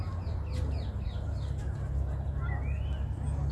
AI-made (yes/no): no